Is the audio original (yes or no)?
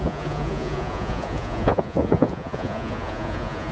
no